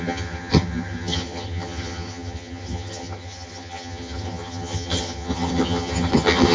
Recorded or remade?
remade